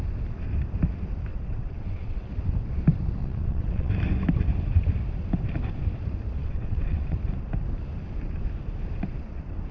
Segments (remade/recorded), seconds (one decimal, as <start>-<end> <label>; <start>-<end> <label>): 0.0-1.3 recorded; 1.3-2.3 remade; 2.3-3.2 recorded; 3.2-3.9 remade; 3.9-6.4 recorded; 6.4-7.2 remade; 7.2-9.7 recorded